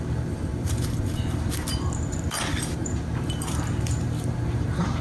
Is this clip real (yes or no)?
no